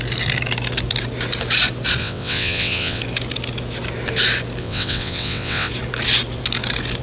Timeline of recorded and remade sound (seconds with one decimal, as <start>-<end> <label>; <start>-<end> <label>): 0.0-2.0 recorded; 2.0-3.0 remade; 3.0-4.6 recorded; 4.6-5.7 remade; 5.7-7.0 recorded